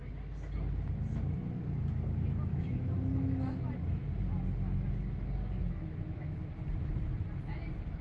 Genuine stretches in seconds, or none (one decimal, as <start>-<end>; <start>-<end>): 0.0-2.5; 3.4-5.6; 6.5-8.0